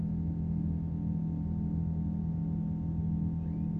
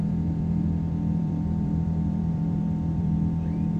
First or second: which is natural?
first